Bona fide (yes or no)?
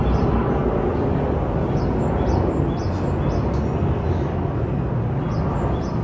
yes